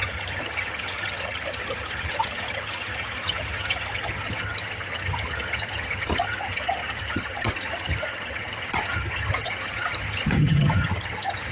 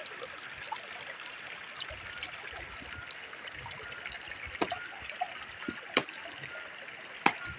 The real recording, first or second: second